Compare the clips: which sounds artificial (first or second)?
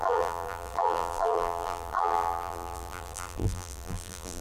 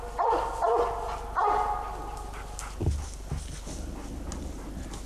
first